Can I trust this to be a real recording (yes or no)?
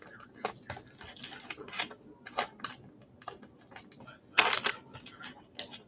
yes